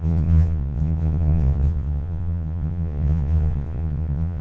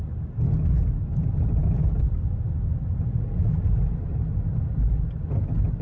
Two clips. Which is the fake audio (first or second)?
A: first